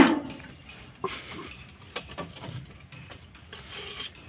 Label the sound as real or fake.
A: real